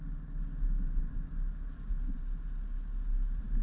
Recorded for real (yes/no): yes